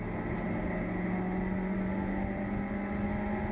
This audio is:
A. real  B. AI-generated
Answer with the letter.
A